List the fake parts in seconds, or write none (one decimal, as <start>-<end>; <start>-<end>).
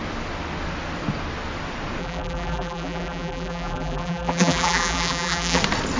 2.0-5.6